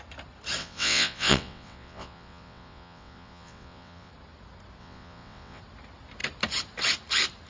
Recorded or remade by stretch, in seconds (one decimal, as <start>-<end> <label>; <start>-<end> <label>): 0.0-0.6 recorded; 0.6-4.1 remade; 4.1-4.8 recorded; 4.8-5.6 remade; 5.6-7.5 recorded